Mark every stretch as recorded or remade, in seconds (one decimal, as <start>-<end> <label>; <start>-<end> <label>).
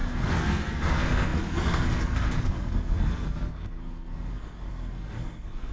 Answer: 0.0-5.7 remade